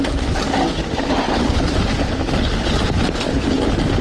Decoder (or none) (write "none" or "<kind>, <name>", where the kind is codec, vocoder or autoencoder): none